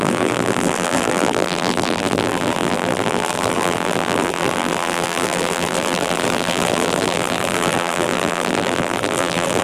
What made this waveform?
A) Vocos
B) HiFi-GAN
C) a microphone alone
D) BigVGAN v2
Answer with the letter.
D